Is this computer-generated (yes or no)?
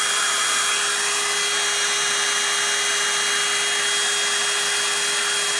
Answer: no